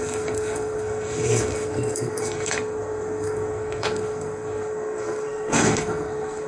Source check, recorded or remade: remade